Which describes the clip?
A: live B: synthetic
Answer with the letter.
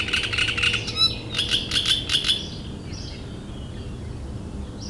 A